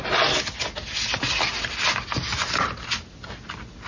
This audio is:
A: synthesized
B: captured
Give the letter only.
B